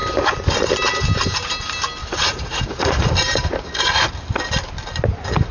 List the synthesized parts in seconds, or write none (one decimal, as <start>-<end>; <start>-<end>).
2.0-3.1

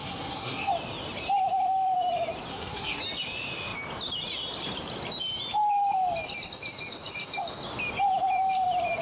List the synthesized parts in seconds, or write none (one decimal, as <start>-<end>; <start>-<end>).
0.0-0.7; 2.5-3.0

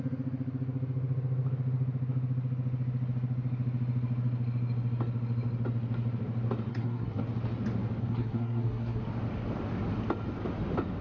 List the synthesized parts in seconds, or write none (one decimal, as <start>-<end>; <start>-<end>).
6.7-7.2; 8.0-9.0

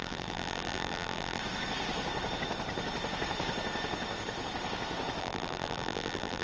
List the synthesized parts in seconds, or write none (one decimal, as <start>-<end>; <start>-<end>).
0.0-1.4; 5.2-6.4

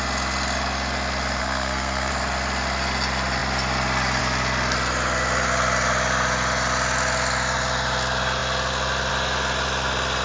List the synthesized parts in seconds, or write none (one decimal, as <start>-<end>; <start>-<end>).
1.4-2.1